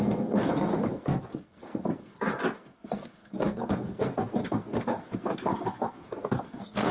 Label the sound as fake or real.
fake